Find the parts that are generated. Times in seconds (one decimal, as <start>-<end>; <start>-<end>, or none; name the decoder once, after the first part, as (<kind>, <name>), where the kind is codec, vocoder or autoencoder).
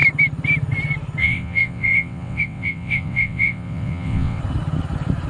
1.2-4.4 (vocoder, WaveNeXt)